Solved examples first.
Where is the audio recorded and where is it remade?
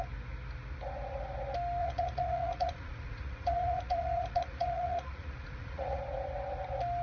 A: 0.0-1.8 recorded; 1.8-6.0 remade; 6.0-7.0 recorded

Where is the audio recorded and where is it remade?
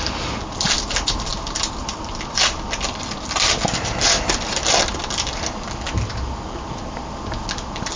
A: 0.0-8.0 recorded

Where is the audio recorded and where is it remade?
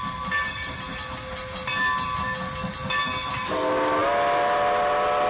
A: 0.0-5.3 recorded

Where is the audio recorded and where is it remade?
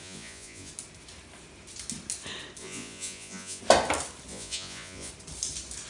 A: 0.0-0.7 remade; 0.7-2.6 recorded; 2.6-3.6 remade; 3.6-4.3 recorded; 4.3-5.1 remade; 5.1-5.9 recorded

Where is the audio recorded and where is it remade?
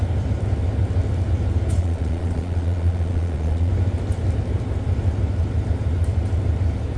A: 0.0-1.8 recorded; 1.8-3.7 remade; 3.7-7.0 recorded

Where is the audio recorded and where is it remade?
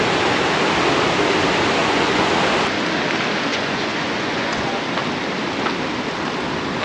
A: 0.0-1.8 recorded; 1.8-2.3 remade; 2.3-3.5 recorded; 3.5-4.8 remade; 4.8-6.8 recorded